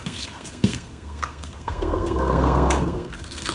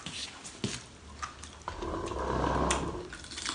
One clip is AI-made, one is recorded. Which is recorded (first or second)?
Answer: second